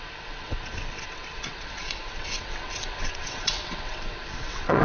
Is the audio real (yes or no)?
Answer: no